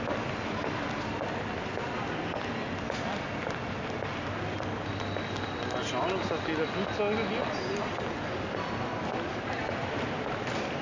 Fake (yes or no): no